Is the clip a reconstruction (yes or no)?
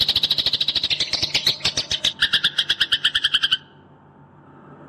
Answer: no